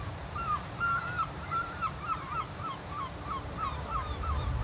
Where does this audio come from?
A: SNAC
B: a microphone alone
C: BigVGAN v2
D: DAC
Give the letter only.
C